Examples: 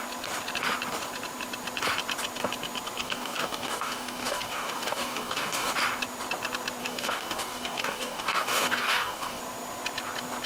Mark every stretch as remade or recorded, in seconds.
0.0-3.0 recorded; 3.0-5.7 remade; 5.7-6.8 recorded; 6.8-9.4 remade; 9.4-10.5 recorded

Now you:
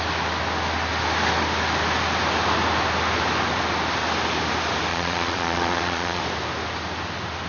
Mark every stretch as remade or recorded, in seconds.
0.0-4.9 recorded; 4.9-6.2 remade; 6.2-7.5 recorded

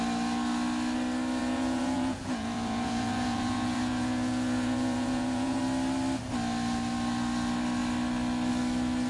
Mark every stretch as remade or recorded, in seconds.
0.0-1.4 recorded; 1.4-5.6 remade; 5.6-9.1 recorded

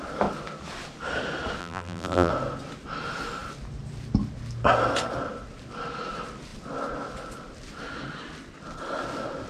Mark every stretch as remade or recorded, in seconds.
0.0-1.6 recorded; 1.6-2.3 remade; 2.3-9.5 recorded

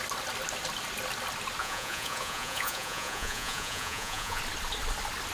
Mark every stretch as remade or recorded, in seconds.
0.0-1.6 recorded; 1.6-4.4 remade; 4.4-5.3 recorded

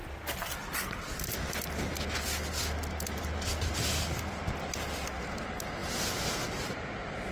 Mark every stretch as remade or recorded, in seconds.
0.0-7.3 recorded

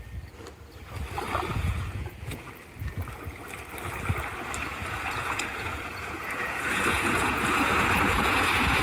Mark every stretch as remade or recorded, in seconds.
0.0-1.5 recorded; 1.5-2.5 remade; 2.5-4.7 recorded; 4.7-8.8 remade